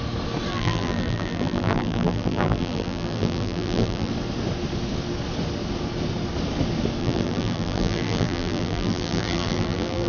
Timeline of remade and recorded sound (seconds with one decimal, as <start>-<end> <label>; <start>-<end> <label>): 0.0-0.5 recorded; 0.5-4.1 remade; 4.1-7.0 recorded; 7.0-10.1 remade